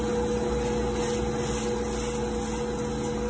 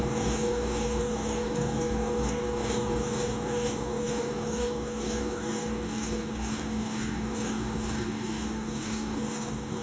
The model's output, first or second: second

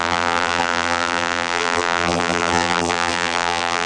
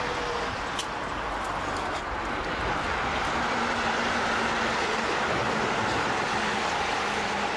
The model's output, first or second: first